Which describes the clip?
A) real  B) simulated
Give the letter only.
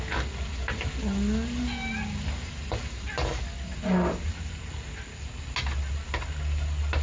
A